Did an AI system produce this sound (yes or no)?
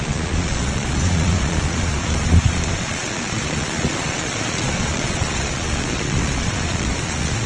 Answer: yes